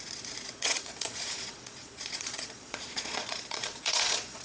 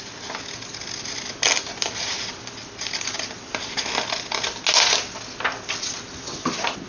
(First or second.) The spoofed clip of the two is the first